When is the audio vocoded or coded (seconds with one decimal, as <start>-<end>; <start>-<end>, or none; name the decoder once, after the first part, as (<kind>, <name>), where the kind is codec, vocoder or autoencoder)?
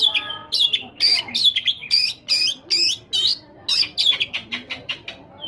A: none